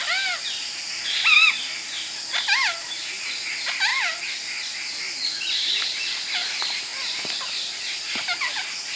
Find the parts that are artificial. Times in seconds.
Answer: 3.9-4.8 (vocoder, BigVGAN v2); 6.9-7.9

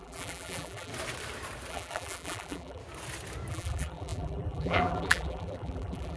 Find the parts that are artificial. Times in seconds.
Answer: 0.0-0.9 (vocoder, BigVGAN v2); 1.7-2.8; 3.5-6.2

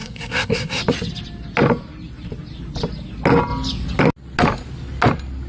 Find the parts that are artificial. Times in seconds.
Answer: 0.0-0.8 (codec, SNAC)

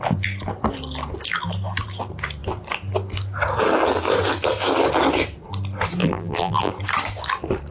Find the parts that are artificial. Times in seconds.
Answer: 6.0-6.7 (vocoder, BigVGAN v2)

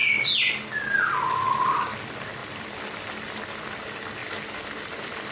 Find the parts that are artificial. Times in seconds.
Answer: 2.4-3.3 (vocoder, BigVGAN v2); 4.2-5.3